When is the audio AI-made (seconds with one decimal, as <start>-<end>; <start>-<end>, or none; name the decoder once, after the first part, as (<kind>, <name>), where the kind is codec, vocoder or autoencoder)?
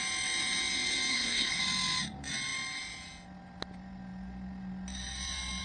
1.1-1.6 (codec, SNAC)